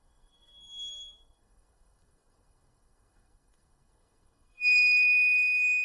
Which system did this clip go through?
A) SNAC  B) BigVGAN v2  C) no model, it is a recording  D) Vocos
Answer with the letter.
A